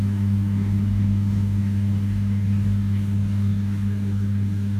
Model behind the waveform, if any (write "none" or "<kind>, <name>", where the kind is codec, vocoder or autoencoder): codec, DAC